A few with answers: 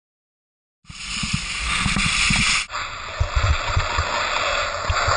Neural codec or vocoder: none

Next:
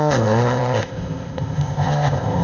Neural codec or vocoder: codec, ZipCodec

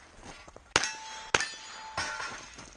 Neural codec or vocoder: none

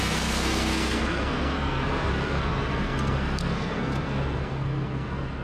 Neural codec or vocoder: codec, SNAC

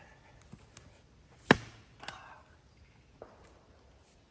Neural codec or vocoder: none